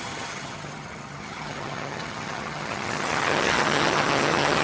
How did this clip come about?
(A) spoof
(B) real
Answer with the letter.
A